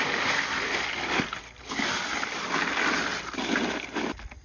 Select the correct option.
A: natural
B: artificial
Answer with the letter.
B